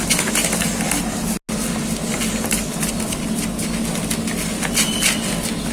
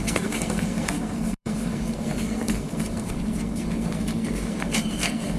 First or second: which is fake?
second